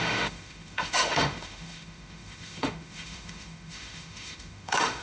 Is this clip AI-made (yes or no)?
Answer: yes